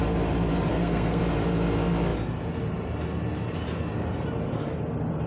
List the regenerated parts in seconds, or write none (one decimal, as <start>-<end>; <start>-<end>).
0.7-1.2